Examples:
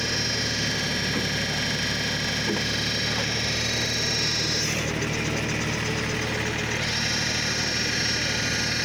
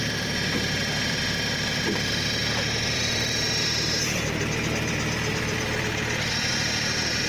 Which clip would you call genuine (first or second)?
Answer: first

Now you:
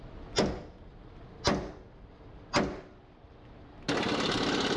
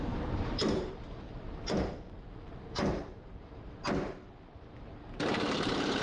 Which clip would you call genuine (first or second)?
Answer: first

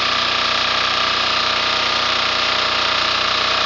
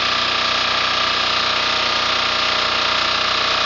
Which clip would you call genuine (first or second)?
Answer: second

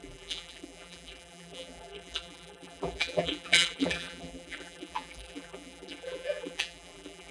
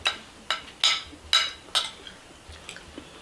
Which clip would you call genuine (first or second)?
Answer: second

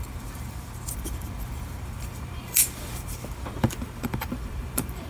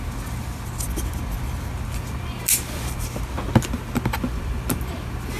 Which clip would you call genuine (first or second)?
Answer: second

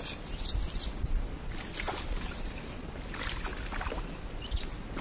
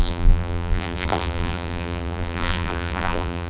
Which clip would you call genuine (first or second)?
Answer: first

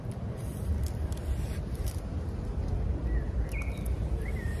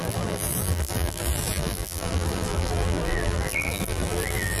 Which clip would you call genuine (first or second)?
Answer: first